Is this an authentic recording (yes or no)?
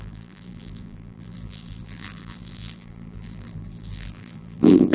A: no